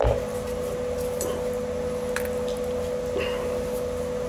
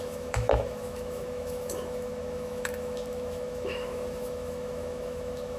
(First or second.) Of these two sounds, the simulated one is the second